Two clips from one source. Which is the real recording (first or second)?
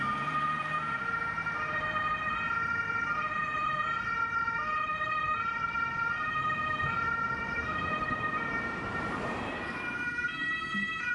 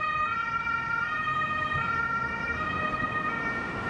second